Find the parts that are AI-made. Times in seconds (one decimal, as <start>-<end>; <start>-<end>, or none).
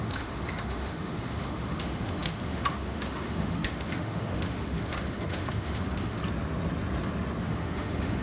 0.0-6.2; 7.4-8.2